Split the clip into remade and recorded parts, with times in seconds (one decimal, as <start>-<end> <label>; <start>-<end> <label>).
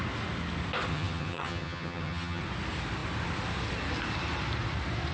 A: 0.0-0.9 recorded; 0.9-2.4 remade; 2.4-5.1 recorded